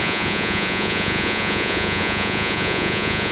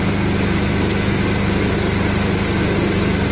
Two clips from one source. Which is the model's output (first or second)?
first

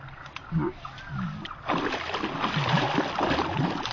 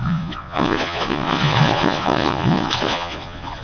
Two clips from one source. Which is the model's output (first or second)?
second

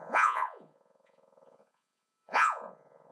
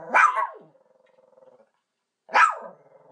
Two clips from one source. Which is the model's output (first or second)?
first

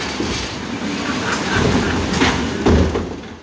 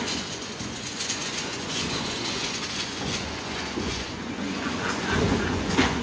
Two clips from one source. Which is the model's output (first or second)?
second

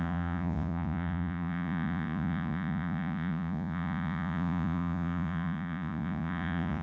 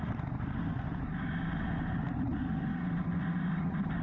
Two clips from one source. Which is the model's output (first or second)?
first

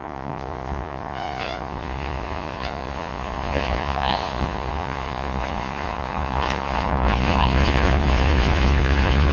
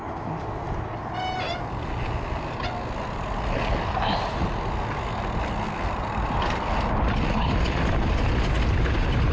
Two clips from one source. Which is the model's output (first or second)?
first